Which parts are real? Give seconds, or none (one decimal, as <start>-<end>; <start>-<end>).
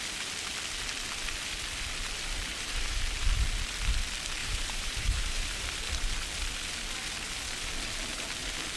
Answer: 0.0-2.5; 3.0-4.4; 5.8-8.8